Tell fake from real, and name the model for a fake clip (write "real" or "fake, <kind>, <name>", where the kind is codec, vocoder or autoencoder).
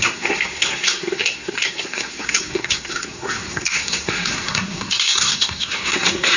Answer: fake, codec, SNAC